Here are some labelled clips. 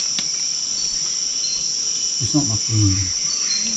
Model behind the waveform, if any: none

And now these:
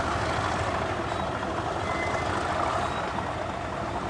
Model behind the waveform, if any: none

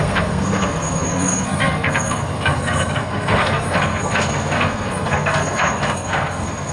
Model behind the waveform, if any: codec, SNAC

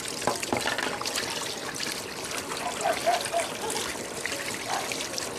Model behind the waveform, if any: none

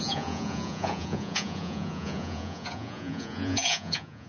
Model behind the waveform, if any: vocoder, Vocos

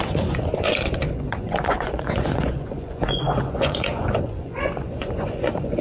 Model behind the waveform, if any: vocoder, Vocos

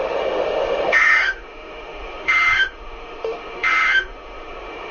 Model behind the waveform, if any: autoencoder, DAC-VAE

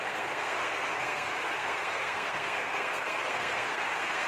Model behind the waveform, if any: codec, SNAC